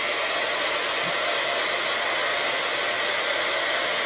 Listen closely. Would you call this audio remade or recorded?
recorded